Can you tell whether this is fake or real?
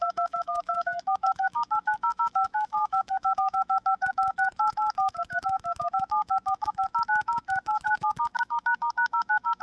fake